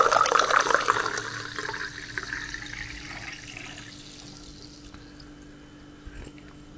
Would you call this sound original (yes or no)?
yes